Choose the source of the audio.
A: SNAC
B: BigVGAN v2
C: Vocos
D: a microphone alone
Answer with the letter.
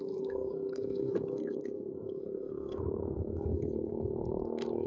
A